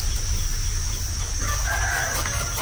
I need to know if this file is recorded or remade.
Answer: recorded